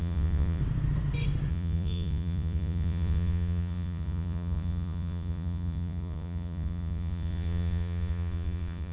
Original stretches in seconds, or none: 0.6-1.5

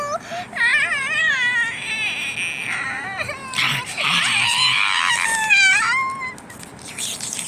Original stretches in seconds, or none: 0.0-0.7; 1.3-2.6; 5.9-7.5

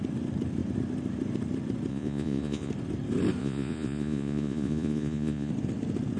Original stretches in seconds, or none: 0.0-1.9; 2.7-3.4; 5.5-6.2

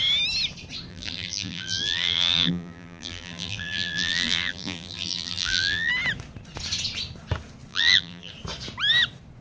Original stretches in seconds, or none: 0.0-0.9; 5.9-7.7; 8.3-9.4

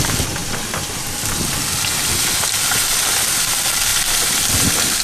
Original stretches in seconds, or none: 0.0-5.0

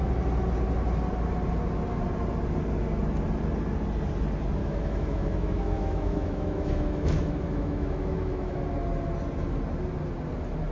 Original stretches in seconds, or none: 0.0-4.6; 8.6-10.7

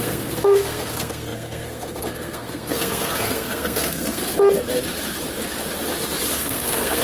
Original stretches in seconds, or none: 4.2-6.3

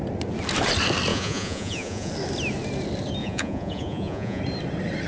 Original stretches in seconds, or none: 0.0-1.1; 2.1-3.2; 4.4-5.1